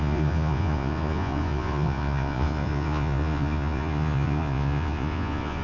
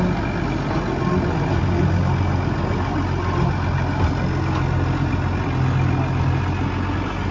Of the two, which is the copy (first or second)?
first